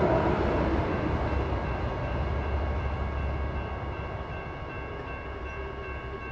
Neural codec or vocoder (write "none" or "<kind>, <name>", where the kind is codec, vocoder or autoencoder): none